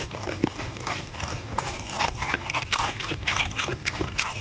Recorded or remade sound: remade